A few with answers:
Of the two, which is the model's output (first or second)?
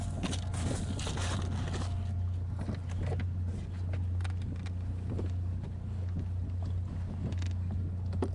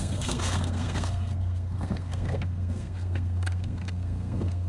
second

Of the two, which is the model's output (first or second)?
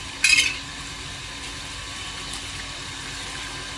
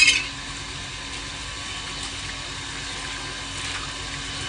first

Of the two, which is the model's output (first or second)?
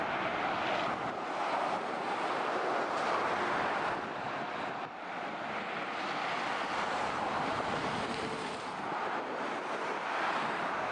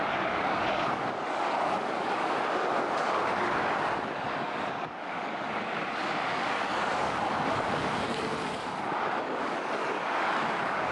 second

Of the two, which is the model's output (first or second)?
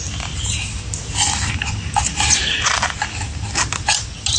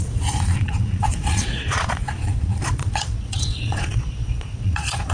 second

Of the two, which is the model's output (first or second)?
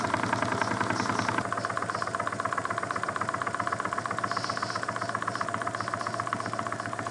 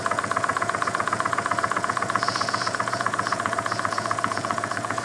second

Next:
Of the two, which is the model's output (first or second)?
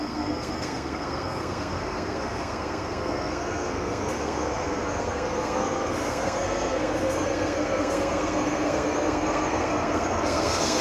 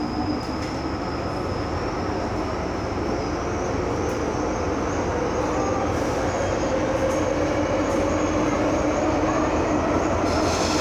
first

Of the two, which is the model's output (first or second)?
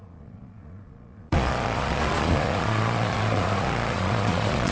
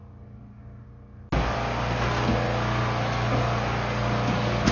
first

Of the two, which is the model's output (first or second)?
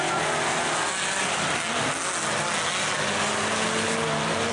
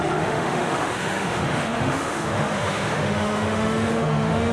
second